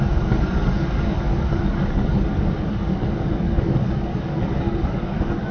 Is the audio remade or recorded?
remade